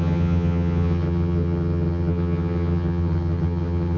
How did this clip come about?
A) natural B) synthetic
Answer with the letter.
B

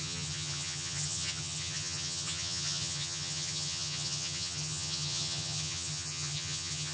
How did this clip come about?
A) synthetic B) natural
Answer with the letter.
A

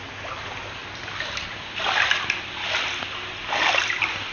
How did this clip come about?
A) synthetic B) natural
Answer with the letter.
B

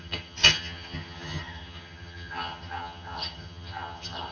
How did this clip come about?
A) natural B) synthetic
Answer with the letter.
B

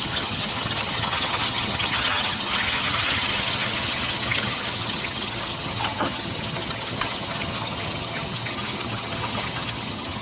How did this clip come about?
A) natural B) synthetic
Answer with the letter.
B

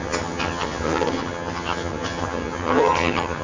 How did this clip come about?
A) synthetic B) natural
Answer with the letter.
A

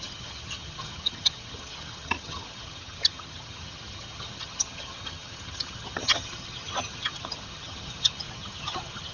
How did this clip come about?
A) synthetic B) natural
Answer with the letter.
A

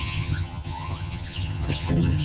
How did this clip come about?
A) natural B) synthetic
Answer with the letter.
B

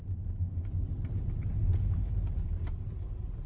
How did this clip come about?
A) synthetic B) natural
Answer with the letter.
B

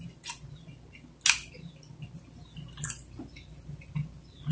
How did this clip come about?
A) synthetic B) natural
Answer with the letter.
B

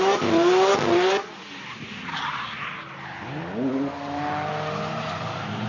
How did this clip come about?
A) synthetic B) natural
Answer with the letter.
B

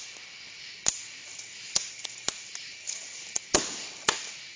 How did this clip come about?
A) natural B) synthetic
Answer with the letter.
A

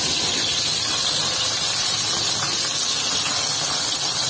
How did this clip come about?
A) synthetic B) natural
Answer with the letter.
B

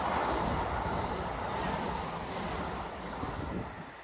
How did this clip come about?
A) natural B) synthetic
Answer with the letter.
A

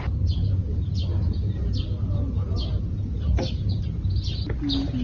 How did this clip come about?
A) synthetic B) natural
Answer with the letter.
B